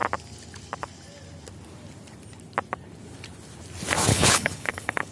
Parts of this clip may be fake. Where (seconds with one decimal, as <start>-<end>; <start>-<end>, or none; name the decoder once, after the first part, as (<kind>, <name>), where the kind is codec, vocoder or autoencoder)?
4.1-5.1 (codec, HILCodec)